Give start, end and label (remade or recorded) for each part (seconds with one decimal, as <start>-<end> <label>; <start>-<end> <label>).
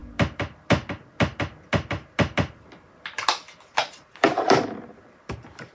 0.0-3.8 recorded; 3.8-4.6 remade; 4.6-5.7 recorded